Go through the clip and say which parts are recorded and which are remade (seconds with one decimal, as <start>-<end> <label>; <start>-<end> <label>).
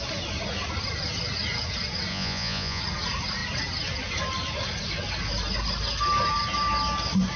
0.0-2.1 recorded; 2.1-2.8 remade; 2.8-7.4 recorded